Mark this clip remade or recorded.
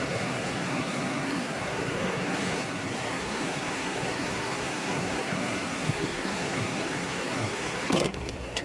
remade